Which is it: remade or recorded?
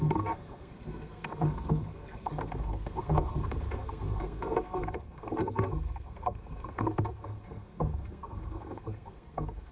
remade